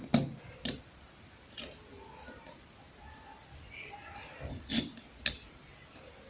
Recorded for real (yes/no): yes